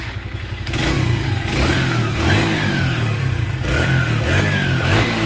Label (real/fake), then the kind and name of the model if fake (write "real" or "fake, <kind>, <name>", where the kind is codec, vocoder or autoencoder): fake, codec, DAC